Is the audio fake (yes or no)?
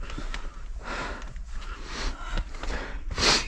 no